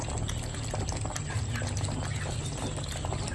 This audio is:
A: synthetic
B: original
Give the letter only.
B